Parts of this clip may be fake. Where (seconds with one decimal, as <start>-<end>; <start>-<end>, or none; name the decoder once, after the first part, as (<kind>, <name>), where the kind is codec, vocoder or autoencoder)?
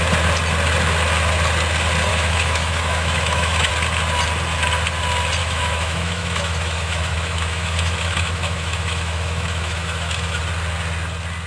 2.1-3.7 (autoencoder, DAC-VAE); 5.4-10.4